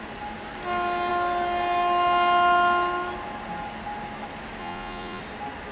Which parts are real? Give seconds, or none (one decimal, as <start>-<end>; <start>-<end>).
0.0-4.6; 5.2-5.7